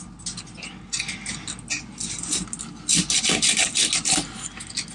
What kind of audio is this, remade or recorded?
recorded